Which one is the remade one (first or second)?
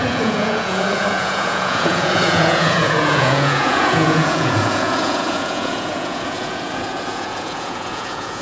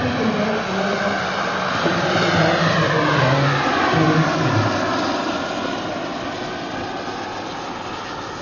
first